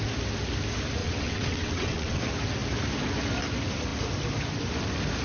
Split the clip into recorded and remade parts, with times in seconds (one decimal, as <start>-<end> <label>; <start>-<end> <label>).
0.0-1.0 recorded; 1.0-2.2 remade; 2.2-5.2 recorded